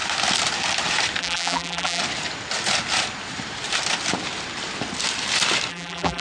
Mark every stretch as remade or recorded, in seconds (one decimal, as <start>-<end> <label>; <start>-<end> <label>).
0.0-1.2 recorded; 1.2-2.0 remade; 2.0-5.7 recorded; 5.7-6.2 remade